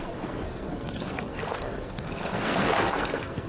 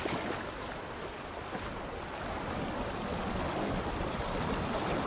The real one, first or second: second